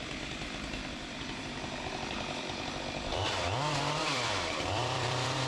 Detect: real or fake fake